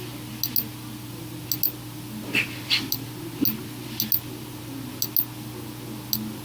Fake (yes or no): no